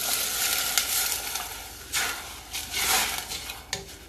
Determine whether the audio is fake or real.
real